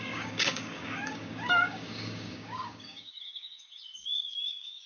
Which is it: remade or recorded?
remade